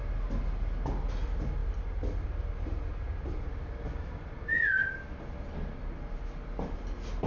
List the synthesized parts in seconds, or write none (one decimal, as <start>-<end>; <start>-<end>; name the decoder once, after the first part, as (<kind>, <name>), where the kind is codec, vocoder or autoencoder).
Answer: none